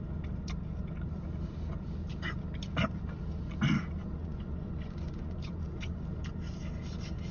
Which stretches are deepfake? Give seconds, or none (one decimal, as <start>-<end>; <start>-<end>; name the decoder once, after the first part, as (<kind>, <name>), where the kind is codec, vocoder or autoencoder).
4.0-6.0 (vocoder, Vocos)